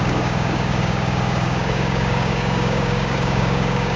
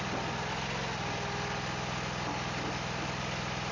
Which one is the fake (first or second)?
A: first